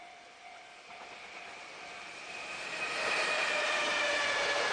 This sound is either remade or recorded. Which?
remade